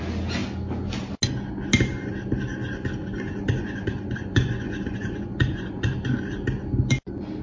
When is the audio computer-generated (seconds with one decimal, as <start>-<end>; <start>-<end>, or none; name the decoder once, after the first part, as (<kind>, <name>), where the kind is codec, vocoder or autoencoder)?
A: 3.0-5.9 (vocoder, Vocos)